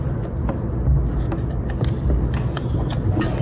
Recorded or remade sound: recorded